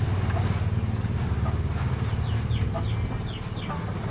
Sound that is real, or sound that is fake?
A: real